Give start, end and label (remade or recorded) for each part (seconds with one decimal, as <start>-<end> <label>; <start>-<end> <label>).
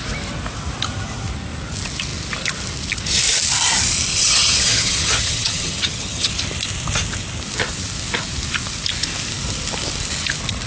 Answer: 0.0-4.1 recorded; 4.1-6.3 remade; 6.3-10.7 recorded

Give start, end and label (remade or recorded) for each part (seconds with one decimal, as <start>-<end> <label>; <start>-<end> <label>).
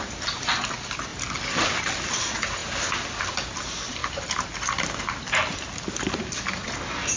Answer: 0.0-7.2 recorded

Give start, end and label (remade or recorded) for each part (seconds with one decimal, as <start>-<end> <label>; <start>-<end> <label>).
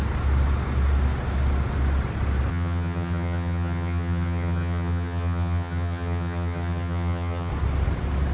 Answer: 0.0-2.5 recorded; 2.5-7.5 remade; 7.5-8.3 recorded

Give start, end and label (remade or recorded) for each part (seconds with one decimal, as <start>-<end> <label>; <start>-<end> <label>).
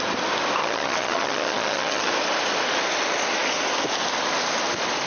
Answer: 0.0-0.6 recorded; 0.6-2.1 remade; 2.1-5.1 recorded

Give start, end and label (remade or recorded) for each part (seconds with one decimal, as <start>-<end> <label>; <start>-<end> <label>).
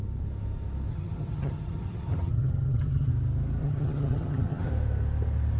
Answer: 0.0-0.9 recorded; 0.9-3.1 remade; 3.1-3.6 recorded; 3.6-4.7 remade; 4.7-5.6 recorded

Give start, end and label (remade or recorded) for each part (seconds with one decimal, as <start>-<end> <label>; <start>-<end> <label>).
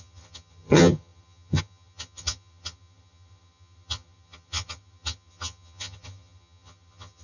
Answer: 0.0-7.2 remade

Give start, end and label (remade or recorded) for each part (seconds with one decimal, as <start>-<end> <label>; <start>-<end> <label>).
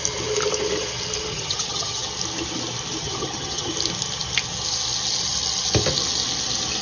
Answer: 0.0-1.3 recorded; 1.3-2.1 remade; 2.1-3.0 recorded; 3.0-3.7 remade; 3.7-6.8 recorded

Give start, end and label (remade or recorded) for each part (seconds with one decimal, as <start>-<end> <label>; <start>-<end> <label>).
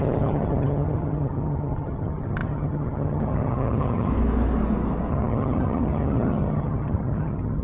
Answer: 0.0-4.1 remade; 4.1-5.1 recorded; 5.1-7.6 remade